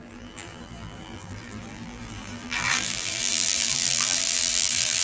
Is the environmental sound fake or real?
fake